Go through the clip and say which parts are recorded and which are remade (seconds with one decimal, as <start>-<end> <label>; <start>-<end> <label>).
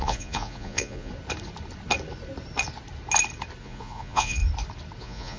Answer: 0.0-1.1 remade; 1.1-3.6 recorded; 3.6-4.4 remade; 4.4-5.0 recorded; 5.0-5.4 remade